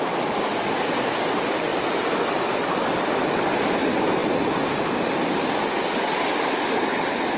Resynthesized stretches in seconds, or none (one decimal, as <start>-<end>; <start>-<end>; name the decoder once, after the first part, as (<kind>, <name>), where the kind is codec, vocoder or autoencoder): 1.7-3.7 (vocoder, BigVGAN v2)